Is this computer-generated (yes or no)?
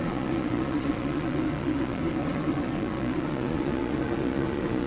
yes